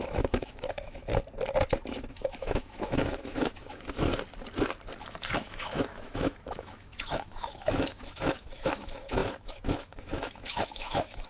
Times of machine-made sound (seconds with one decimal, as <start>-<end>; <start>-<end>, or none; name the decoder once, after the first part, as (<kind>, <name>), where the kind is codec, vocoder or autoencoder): 0.0-1.1 (autoencoder, DAC-VAE); 2.1-4.1; 5.0-11.3